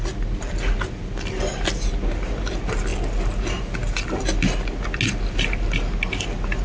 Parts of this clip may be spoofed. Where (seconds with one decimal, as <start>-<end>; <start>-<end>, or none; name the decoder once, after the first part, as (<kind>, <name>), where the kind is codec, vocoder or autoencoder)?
none